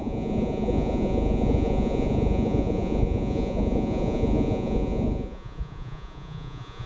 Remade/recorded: remade